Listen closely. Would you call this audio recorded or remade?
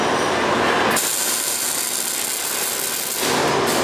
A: recorded